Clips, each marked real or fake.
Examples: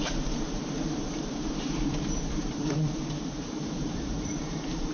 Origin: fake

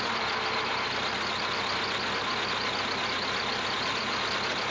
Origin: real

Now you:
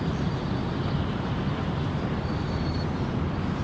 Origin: real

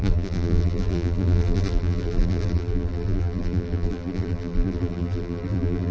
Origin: fake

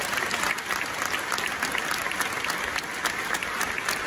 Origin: real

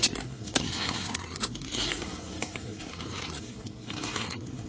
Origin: fake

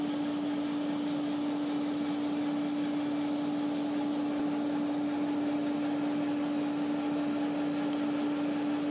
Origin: real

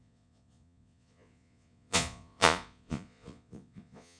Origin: fake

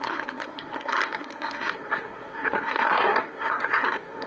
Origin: fake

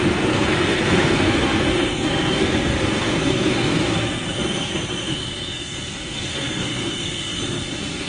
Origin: fake